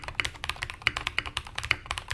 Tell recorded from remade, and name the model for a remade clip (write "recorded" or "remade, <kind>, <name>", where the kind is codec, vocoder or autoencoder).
recorded